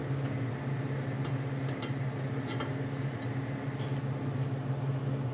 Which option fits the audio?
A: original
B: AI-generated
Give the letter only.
A